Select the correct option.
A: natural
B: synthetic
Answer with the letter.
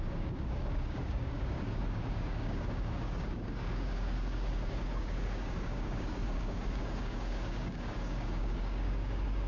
B